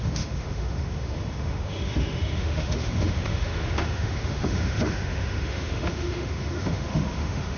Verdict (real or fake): fake